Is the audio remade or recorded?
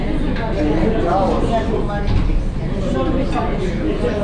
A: recorded